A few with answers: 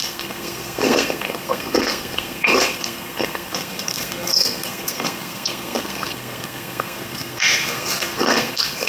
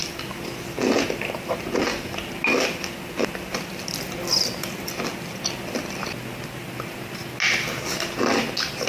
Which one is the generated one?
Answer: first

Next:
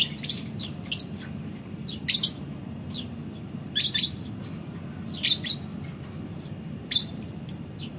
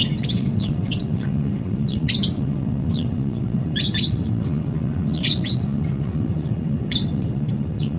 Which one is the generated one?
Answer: second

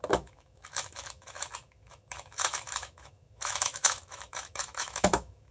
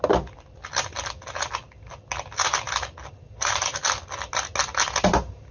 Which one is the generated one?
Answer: first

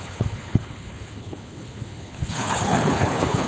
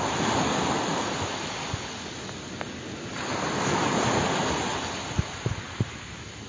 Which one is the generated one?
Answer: first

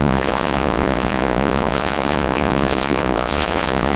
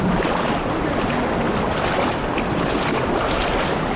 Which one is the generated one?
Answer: first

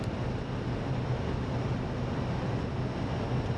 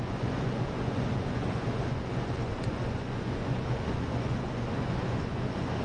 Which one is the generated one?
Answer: second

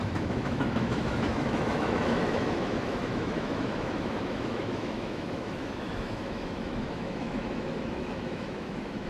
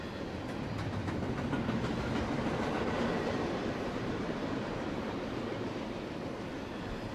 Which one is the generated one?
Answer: first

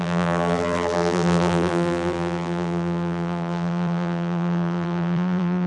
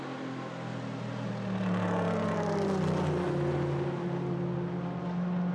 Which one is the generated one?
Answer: first